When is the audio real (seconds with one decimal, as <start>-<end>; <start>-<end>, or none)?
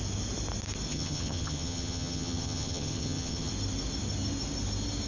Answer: 0.0-0.9; 3.5-5.1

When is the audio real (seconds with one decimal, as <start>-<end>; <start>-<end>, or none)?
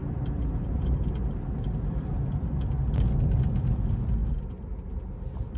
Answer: 0.0-5.6